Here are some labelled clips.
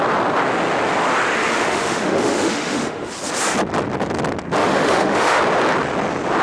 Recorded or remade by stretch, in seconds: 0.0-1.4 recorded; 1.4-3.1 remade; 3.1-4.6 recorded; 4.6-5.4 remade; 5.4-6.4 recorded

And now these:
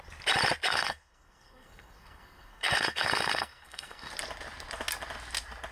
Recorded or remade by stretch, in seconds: 0.0-0.7 recorded; 0.7-4.1 remade; 4.1-5.7 recorded

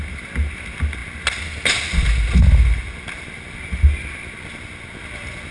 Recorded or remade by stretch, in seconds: 0.0-5.5 recorded